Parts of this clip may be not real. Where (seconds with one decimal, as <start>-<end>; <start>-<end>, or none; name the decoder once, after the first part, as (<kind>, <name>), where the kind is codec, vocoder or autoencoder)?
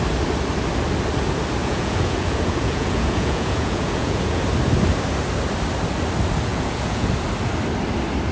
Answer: 1.6-4.4 (vocoder, Vocos); 6.5-7.1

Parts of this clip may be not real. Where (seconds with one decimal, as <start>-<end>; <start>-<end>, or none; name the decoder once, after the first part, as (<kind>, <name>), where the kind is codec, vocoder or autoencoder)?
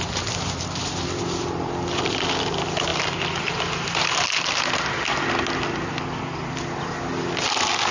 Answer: none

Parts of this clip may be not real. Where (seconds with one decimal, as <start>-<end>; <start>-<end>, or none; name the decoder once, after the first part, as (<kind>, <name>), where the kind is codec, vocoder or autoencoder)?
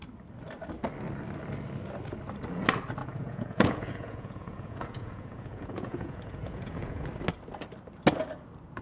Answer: 3.0-7.1 (vocoder, Vocos)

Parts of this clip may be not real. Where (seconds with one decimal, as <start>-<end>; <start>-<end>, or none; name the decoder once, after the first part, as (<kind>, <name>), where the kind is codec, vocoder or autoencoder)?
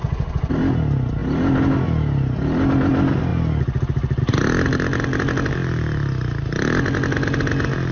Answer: none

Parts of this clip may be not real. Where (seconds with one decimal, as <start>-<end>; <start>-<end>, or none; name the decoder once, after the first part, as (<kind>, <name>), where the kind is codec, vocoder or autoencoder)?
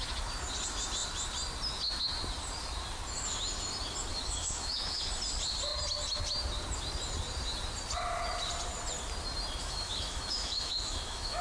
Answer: 4.1-5.1 (autoencoder, DAC-VAE); 9.6-11.4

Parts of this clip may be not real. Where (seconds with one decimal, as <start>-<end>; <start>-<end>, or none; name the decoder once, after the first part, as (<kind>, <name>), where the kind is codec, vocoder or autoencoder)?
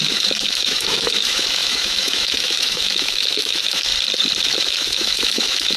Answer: 0.0-3.9 (autoencoder, DAC-VAE); 4.4-5.8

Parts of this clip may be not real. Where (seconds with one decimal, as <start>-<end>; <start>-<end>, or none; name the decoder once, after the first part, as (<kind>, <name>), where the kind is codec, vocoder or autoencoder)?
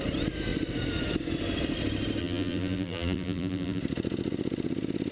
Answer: 2.2-3.8 (vocoder, BigVGAN v2)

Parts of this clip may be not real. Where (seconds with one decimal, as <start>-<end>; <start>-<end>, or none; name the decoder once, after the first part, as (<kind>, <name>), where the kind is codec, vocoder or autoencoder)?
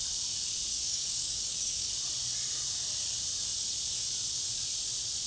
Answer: 0.7-1.9 (codec, DAC)